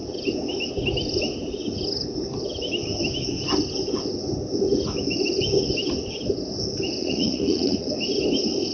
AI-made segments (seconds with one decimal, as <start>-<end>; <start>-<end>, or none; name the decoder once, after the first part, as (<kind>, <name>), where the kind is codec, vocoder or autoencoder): 7.0-7.9 (vocoder, Vocos)